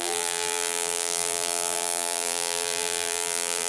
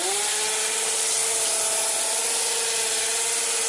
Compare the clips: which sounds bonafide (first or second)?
second